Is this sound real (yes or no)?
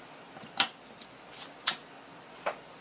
yes